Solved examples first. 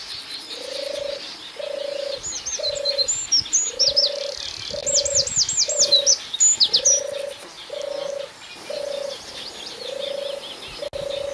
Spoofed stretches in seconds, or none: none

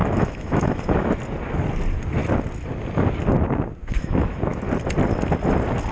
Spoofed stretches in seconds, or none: 0.0-1.2 (autoencoder, DAC-VAE); 3.8-4.6

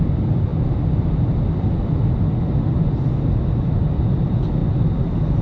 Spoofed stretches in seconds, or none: none